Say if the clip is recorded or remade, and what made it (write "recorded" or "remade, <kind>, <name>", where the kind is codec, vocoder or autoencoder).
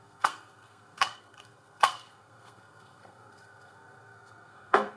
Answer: remade, codec, SNAC